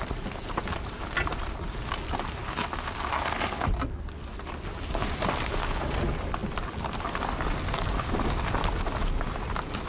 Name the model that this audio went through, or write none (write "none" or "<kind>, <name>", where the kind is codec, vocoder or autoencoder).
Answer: none